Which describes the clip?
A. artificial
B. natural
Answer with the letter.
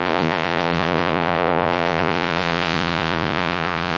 A